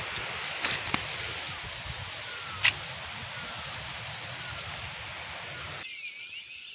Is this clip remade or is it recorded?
recorded